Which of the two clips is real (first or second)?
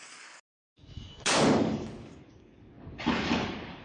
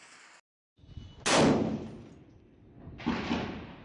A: second